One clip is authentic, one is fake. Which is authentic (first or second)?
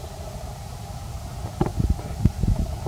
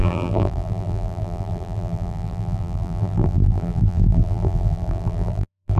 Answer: first